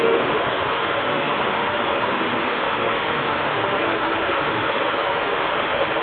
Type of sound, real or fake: fake